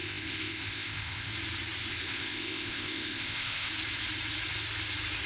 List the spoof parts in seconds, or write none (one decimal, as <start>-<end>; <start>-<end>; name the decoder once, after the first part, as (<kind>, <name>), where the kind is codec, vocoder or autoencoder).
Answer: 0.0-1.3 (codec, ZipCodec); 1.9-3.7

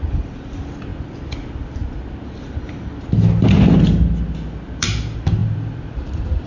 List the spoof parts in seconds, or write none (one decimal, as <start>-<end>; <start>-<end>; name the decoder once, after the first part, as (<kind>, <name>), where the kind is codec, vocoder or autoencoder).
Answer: 0.0-0.9 (vocoder, BigVGAN v2); 4.8-6.5

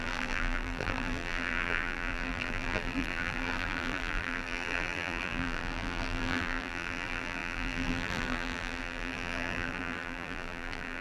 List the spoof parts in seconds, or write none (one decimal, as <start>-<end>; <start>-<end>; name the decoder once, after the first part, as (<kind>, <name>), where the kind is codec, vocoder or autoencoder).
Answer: 0.0-11.0 (vocoder, BigVGAN v2)

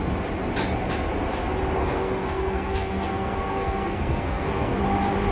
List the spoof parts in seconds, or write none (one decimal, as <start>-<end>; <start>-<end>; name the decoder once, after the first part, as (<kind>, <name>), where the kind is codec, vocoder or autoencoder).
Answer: 1.8-4.8 (codec, SNAC)

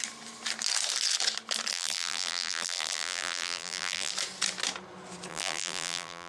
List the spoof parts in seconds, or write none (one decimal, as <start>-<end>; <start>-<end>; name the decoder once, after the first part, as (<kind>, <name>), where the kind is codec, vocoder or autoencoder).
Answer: 1.7-4.1 (vocoder, BigVGAN v2); 5.3-6.3

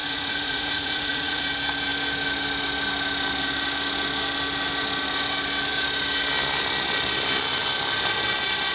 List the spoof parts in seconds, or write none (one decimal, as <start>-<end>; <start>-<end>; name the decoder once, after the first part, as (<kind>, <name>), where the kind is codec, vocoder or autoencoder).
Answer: 0.0-1.4 (vocoder, Vocos)

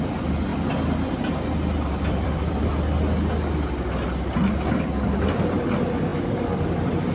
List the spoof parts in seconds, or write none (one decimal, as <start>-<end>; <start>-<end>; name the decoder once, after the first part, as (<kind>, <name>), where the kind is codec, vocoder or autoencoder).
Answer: 0.0-0.5 (vocoder, BigVGAN v2); 1.9-2.7; 5.6-7.1